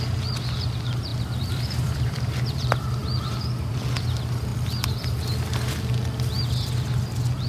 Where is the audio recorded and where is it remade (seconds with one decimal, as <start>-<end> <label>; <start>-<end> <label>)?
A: 0.0-1.1 recorded; 1.1-2.3 remade; 2.3-7.5 recorded